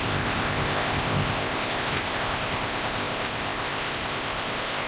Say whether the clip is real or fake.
fake